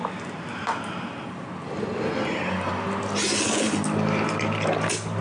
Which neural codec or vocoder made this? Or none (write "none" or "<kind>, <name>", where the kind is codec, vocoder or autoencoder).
none